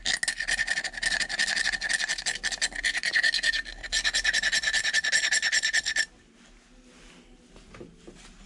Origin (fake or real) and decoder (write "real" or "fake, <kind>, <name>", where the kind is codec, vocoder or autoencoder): real